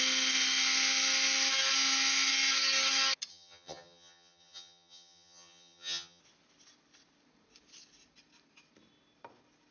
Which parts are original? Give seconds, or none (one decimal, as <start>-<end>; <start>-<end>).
0.0-3.3; 6.2-9.7